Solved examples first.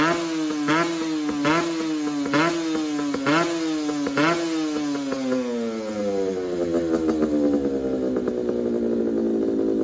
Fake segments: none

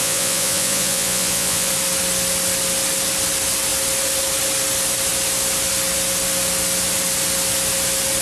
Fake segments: 0.0-1.7 (vocoder, Vocos)

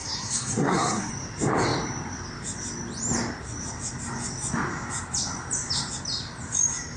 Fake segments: 0.0-1.1 (codec, SNAC)

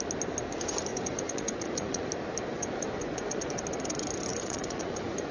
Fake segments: 0.9-2.0 (vocoder, Vocos); 2.5-3.5; 4.3-5.3

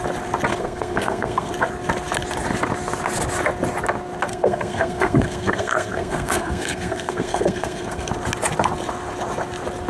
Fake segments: 0.5-1.5 (codec, SNAC); 4.3-8.1

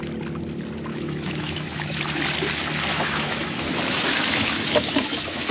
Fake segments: 0.9-2.0 (autoencoder, DAC-VAE); 2.9-5.5